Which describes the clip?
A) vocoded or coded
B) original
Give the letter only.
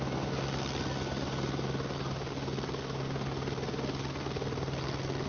B